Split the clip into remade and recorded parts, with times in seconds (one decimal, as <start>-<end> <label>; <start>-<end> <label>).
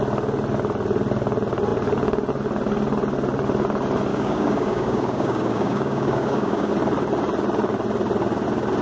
0.0-4.1 recorded; 4.1-6.7 remade; 6.7-8.8 recorded